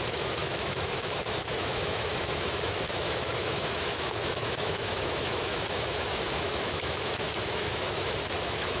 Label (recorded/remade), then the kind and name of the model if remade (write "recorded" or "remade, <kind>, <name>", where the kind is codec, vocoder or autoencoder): remade, autoencoder, DAC-VAE